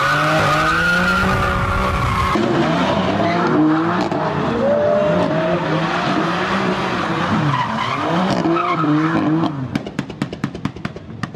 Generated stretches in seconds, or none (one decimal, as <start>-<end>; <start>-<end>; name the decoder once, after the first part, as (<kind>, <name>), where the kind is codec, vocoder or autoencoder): none